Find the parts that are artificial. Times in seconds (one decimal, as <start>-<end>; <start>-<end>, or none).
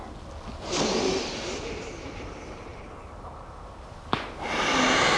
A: none